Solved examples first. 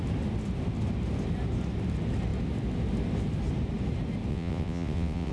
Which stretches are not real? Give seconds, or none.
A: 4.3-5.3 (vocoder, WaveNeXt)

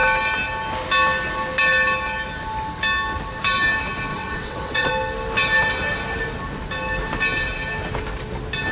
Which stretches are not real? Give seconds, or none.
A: 4.1-4.9 (vocoder, WaveNeXt)

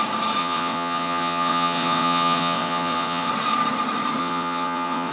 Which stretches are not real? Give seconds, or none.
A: 0.4-3.3 (vocoder, WaveNeXt); 4.2-5.1

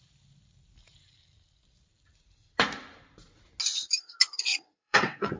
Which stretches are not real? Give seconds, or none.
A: 4.5-5.4 (vocoder, WaveNeXt)